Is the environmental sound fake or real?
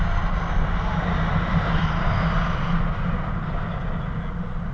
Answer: real